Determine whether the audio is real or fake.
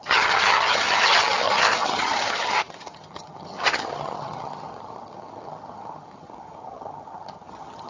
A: fake